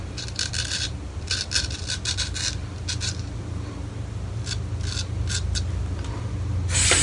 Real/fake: real